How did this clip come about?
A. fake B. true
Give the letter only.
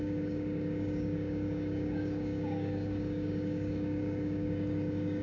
A